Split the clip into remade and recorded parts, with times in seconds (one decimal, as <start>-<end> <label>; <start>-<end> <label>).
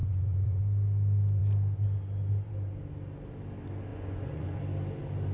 0.0-0.6 remade; 0.6-3.9 recorded; 3.9-4.6 remade; 4.6-5.3 recorded